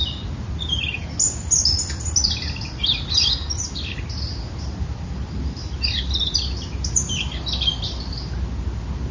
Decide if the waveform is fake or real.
real